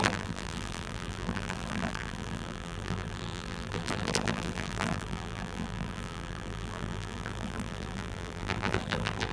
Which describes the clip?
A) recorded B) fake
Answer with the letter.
B